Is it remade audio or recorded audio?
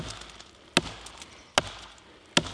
recorded